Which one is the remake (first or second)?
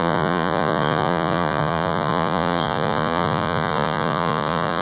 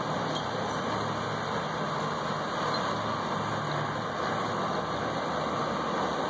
first